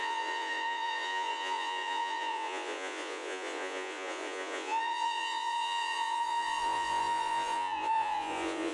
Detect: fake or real fake